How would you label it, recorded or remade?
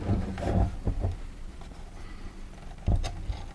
recorded